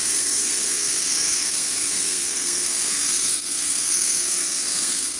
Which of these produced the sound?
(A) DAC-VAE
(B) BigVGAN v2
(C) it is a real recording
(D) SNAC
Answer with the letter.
D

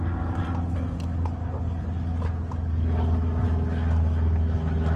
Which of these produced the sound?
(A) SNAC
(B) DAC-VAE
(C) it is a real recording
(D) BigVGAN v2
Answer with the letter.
C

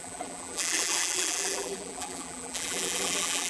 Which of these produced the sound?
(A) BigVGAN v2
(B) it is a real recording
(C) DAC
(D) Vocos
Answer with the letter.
A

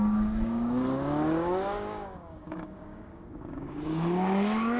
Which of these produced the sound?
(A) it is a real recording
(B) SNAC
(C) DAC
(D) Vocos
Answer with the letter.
C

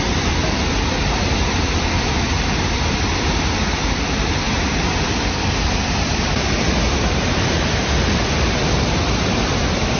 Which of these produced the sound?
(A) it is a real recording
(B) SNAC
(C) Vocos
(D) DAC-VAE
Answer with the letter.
A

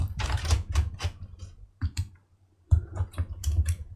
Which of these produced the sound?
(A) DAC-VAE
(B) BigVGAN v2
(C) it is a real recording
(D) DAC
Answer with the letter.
B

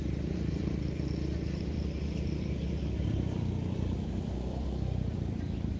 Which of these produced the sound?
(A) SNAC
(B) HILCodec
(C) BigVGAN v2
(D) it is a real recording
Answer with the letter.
C